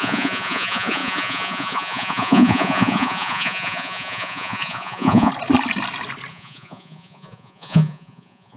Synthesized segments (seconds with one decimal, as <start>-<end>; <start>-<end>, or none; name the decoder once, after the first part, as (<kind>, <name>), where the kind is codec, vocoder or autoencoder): 0.0-5.3 (vocoder, Vocos); 6.3-8.6